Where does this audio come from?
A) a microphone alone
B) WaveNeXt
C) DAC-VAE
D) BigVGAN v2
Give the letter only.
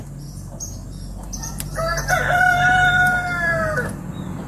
D